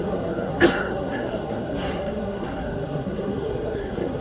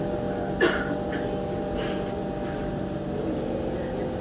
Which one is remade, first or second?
first